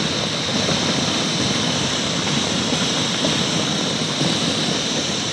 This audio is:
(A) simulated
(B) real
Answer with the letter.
B